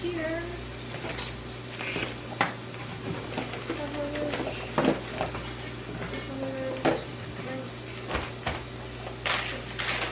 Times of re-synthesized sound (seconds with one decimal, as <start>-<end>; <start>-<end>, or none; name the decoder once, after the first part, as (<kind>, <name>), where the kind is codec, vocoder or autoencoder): none